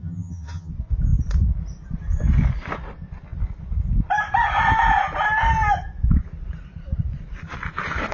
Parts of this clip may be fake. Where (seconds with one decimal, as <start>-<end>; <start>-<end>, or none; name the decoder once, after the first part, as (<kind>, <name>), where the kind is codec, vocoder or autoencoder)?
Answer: 0.0-0.7 (vocoder, HiFi-GAN)